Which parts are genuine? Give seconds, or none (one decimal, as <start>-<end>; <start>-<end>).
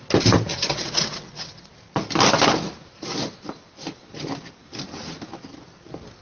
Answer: 0.0-0.5; 1.7-6.2